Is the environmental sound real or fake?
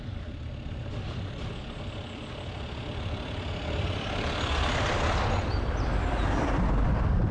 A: fake